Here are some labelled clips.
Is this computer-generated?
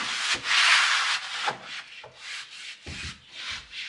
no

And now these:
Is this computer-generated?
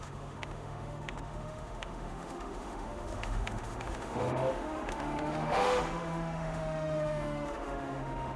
yes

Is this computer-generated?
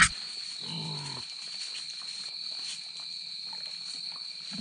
no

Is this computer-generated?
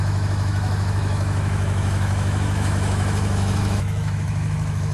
yes